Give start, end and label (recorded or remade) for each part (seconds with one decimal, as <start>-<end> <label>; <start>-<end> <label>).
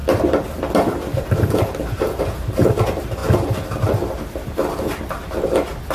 0.0-2.2 remade; 2.2-3.2 recorded; 3.2-3.8 remade; 3.8-5.9 recorded